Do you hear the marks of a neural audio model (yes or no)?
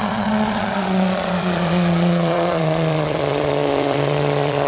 yes